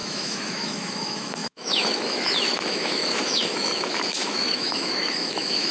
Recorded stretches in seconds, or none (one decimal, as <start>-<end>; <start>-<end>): none